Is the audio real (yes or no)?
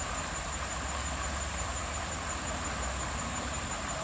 yes